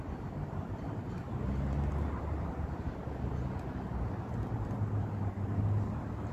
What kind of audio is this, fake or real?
real